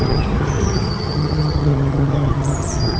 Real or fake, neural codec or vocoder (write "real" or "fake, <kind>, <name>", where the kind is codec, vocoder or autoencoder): fake, vocoder, HiFi-GAN